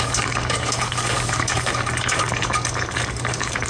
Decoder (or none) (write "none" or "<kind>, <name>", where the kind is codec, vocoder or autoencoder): codec, DAC